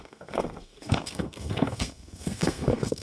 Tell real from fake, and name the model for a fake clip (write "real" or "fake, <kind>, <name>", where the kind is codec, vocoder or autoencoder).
fake, codec, SNAC